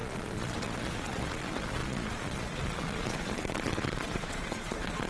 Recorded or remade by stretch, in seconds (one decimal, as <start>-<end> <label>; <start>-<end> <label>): 0.0-5.1 remade